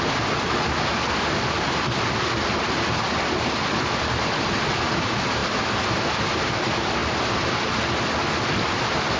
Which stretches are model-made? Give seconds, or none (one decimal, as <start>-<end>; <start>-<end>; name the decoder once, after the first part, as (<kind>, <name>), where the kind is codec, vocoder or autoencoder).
none